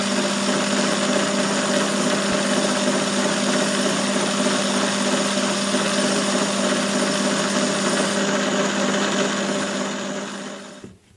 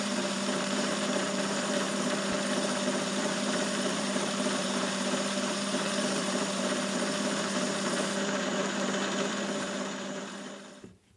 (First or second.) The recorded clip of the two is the first